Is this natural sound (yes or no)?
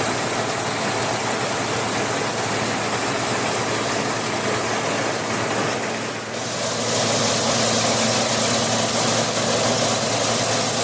yes